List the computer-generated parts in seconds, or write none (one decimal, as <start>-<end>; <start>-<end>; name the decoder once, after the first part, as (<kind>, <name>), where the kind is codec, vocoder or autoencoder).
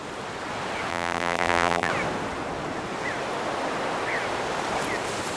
0.9-1.9 (vocoder, BigVGAN v2)